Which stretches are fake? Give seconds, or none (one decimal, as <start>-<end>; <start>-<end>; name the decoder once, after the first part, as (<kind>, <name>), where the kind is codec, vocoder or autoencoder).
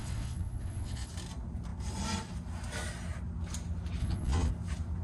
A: 0.0-1.1 (vocoder, Vocos); 4.0-4.5